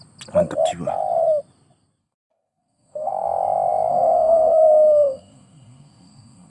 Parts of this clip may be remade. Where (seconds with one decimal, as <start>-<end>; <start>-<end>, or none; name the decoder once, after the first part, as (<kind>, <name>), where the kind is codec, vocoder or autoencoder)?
2.0-3.1 (codec, SNAC); 3.9-6.5